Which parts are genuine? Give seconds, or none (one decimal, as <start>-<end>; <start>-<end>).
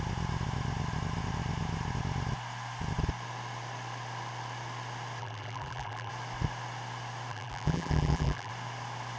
0.0-5.2; 6.1-7.3; 8.5-9.2